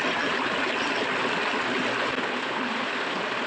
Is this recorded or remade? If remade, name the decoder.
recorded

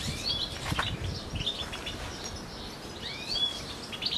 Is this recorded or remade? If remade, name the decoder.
recorded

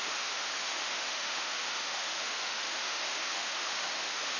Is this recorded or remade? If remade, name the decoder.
remade, autoencoder, DAC-VAE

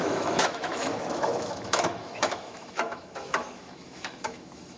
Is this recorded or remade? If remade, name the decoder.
remade, autoencoder, DAC-VAE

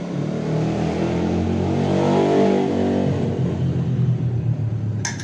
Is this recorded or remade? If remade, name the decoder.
recorded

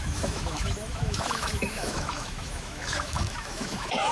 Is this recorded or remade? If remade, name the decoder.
remade, autoencoder, DAC-VAE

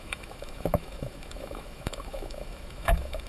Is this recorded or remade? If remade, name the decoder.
remade, autoencoder, DAC-VAE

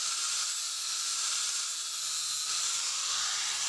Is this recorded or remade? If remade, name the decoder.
recorded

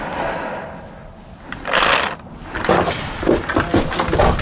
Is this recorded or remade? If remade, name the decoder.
recorded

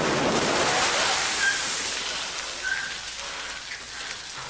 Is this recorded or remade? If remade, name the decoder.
recorded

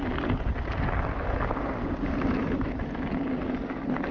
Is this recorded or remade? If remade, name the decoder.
recorded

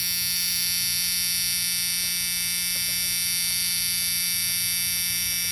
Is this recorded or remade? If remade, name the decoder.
recorded